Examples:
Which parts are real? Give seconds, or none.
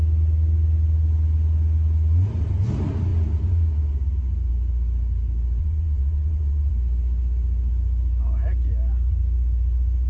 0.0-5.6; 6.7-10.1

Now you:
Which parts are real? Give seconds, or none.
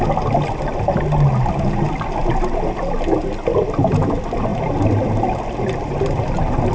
0.0-6.7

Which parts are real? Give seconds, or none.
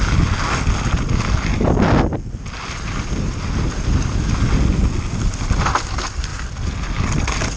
0.0-7.6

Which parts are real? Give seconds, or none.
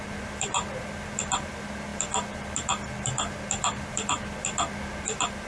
0.0-5.5